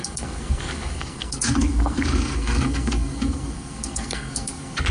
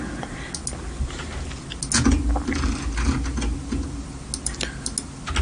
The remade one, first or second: first